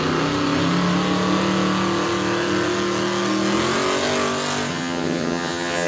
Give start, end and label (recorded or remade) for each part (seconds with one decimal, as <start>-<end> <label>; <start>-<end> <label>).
0.0-4.7 recorded; 4.7-5.9 remade